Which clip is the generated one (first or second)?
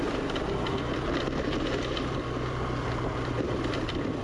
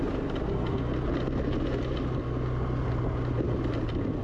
first